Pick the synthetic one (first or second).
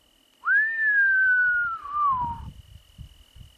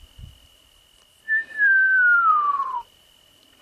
second